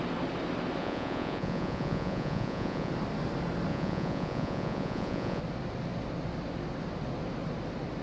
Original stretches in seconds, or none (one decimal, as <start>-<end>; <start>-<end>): 0.0-0.8; 2.9-3.7; 5.4-8.0